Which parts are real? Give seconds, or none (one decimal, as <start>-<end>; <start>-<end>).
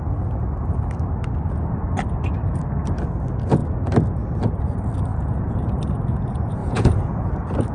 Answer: 0.0-5.1; 5.8-6.6; 7.3-7.7